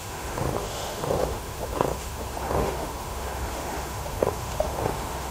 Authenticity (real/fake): fake